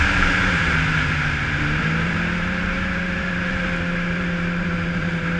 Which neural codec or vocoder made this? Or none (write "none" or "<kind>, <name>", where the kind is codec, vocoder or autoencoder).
vocoder, BigVGAN v2